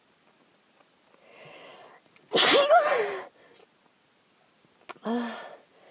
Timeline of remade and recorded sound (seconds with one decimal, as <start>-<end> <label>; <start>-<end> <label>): 0.0-5.9 recorded